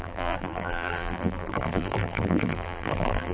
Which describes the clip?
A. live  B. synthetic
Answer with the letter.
B